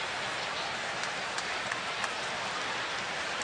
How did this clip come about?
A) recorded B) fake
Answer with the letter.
A